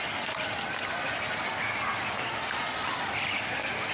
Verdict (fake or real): real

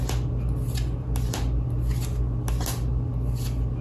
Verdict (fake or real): real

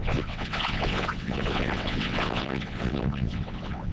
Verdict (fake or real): fake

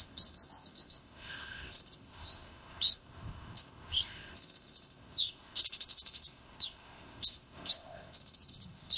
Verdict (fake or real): fake